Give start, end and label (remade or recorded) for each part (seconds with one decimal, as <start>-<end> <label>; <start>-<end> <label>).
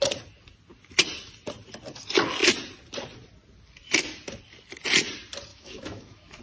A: 0.0-5.5 recorded; 5.5-6.4 remade